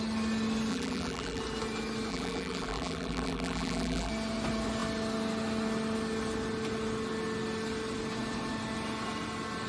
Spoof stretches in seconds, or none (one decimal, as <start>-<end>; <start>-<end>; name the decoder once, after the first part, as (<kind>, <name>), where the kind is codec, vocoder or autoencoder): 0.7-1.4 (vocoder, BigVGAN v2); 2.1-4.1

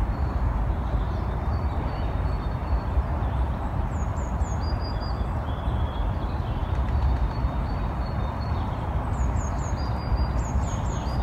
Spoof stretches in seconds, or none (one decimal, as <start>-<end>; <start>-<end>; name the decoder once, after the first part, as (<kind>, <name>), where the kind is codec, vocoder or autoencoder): 0.0-11.2 (vocoder, BigVGAN v2)

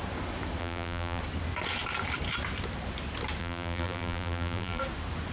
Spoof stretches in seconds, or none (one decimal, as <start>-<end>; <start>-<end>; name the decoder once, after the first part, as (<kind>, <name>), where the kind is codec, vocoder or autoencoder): 0.6-1.2 (vocoder, BigVGAN v2); 3.4-4.8

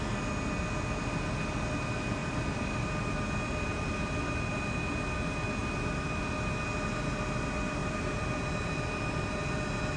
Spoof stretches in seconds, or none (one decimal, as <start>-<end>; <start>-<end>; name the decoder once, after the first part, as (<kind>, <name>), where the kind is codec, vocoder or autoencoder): 2.2-2.9 (vocoder, BigVGAN v2); 5.6-6.2; 7.8-9.3